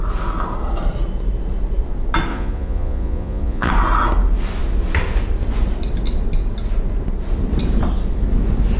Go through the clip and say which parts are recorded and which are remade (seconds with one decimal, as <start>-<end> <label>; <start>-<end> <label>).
0.0-2.3 recorded; 2.3-3.7 remade; 3.7-8.8 recorded